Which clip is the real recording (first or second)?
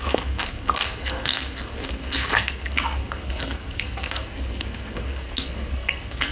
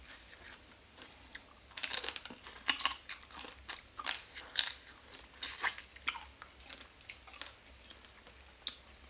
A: second